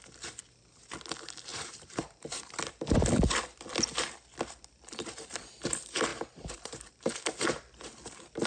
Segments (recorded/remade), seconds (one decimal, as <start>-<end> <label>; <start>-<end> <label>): 0.0-1.5 recorded; 1.5-2.5 remade; 2.5-6.1 recorded; 6.1-7.2 remade; 7.2-8.5 recorded